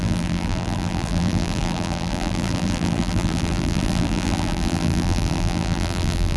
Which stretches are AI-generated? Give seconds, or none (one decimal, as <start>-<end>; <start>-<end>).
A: 0.0-6.4